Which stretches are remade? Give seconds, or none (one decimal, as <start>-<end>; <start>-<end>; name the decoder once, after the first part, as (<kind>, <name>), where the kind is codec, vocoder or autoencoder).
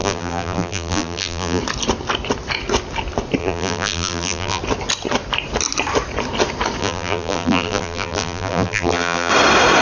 0.0-1.6 (vocoder, BigVGAN v2); 3.4-4.6; 6.8-9.3